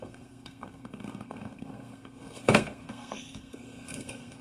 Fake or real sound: fake